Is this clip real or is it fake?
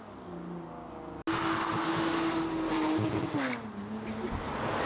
real